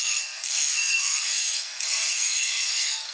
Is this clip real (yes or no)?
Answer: no